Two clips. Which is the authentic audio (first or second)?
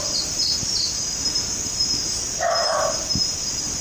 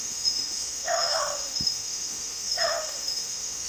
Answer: first